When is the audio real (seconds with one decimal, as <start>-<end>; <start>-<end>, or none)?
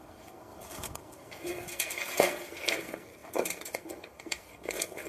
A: none